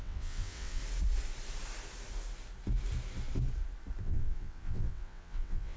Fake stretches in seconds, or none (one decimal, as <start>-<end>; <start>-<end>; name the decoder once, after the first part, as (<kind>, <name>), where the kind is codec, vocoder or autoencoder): 0.0-0.8 (vocoder, WaveNeXt); 4.0-5.8